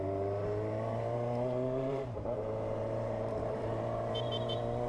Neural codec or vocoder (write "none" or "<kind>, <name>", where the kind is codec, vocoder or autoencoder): vocoder, BigVGAN v2